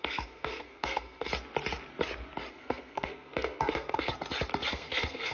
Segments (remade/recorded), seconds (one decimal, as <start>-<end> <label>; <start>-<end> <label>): 0.0-1.3 remade; 1.3-2.5 recorded; 2.5-4.1 remade; 4.1-4.7 recorded; 4.7-5.3 remade